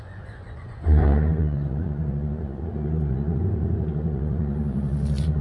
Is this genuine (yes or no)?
no